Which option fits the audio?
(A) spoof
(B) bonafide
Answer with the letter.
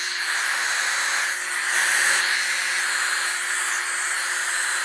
B